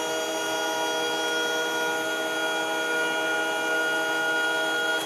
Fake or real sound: real